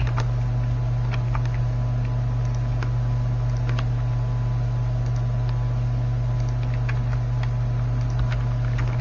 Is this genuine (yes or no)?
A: yes